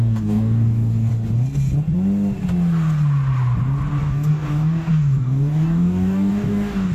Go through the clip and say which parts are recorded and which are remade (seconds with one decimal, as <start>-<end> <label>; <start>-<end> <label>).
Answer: 0.0-1.1 remade; 1.1-4.0 recorded; 4.0-6.9 remade